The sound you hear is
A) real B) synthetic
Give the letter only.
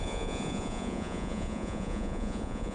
B